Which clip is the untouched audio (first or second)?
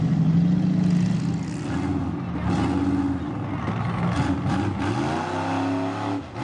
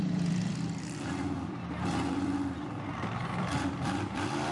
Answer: first